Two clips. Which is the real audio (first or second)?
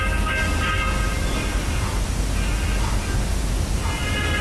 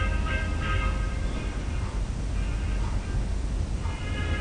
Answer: first